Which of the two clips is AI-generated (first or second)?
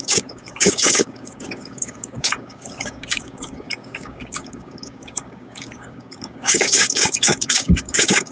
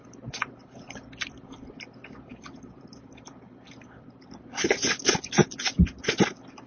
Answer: first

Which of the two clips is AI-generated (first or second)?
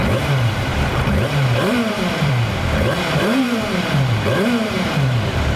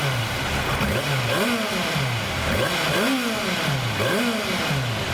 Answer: first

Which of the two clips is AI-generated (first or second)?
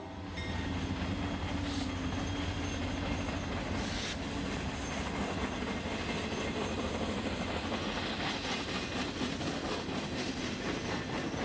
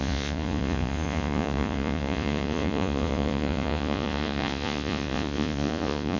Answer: second